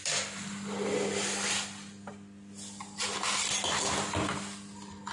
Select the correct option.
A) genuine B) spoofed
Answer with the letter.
A